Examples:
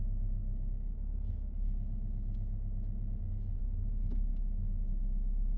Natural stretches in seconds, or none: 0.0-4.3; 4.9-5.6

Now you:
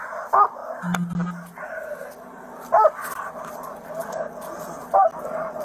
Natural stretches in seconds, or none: 0.0-5.6

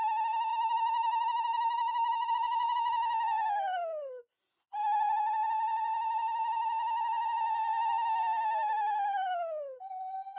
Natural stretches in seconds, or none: 0.0-0.5; 2.3-10.4

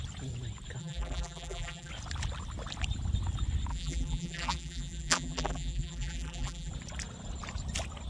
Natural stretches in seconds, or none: 0.0-0.8; 1.9-3.7; 6.7-8.1

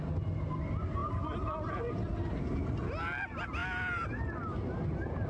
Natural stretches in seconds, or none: 0.0-5.3

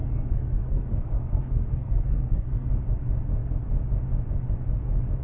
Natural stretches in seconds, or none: 2.7-5.2

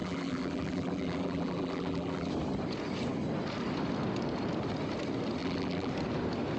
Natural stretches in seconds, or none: 2.3-5.4; 5.9-6.6